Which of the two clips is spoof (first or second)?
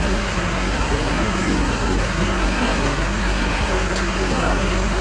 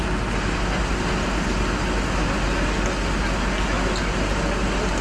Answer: first